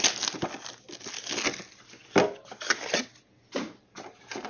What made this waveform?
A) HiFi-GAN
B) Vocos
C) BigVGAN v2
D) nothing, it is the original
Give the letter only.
D